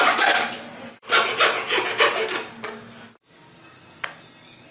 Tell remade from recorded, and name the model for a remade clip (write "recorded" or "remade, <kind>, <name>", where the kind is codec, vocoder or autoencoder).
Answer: recorded